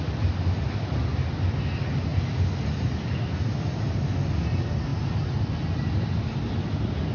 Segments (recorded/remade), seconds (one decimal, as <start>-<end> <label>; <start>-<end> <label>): 0.0-7.1 recorded